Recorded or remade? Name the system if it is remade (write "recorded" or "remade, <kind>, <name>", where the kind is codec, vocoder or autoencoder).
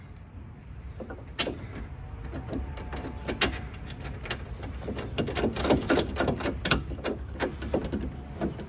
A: recorded